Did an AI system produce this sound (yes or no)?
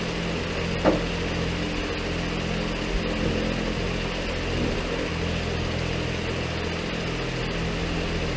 no